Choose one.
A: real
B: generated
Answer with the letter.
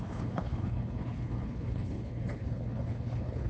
B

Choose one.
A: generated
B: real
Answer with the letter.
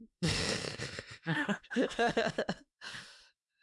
A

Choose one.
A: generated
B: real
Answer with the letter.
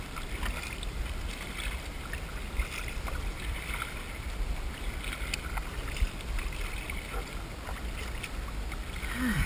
B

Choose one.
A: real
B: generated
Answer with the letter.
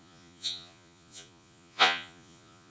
B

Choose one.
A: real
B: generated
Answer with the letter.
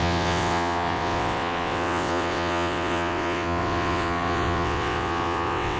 B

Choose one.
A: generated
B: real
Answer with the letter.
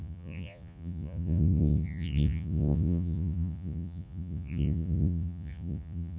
A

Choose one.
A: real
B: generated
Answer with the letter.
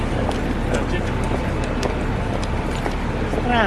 A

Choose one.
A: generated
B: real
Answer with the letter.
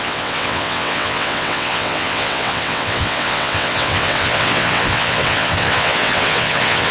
A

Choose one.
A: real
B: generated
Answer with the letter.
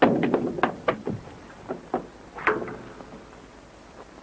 A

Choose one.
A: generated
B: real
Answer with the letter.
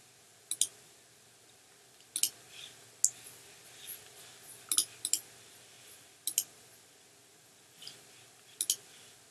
B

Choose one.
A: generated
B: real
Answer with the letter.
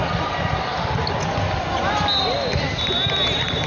B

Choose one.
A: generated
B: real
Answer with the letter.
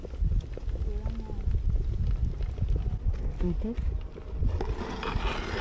B